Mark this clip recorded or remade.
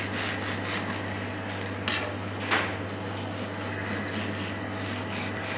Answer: recorded